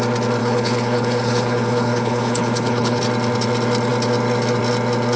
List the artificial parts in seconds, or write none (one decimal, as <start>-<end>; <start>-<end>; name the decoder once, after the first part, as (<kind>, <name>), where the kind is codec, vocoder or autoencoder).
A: 0.4-3.0 (codec, HILCodec)